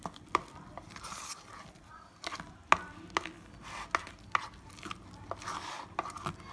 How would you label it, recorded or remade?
recorded